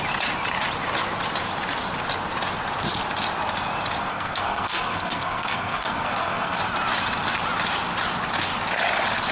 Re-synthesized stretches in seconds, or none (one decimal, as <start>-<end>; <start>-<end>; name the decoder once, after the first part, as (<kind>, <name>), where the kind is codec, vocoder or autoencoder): 4.1-6.6 (codec, SNAC)